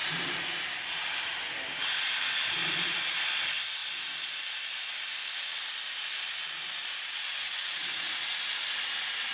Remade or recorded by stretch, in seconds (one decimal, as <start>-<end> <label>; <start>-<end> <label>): 0.0-1.5 remade; 1.5-7.8 recorded; 7.8-8.9 remade; 8.9-9.3 recorded